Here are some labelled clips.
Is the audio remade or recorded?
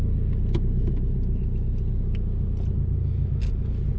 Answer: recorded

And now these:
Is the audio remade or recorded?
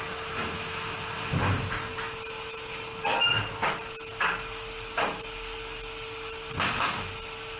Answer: recorded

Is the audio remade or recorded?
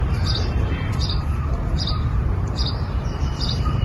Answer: remade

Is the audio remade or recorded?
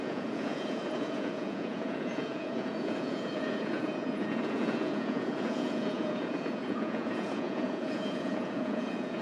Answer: remade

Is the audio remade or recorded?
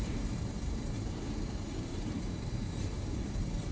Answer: remade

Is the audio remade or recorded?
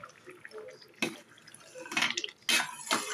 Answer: recorded